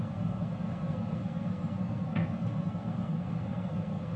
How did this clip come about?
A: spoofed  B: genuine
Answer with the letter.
A